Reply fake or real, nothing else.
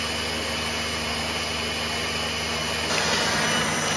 real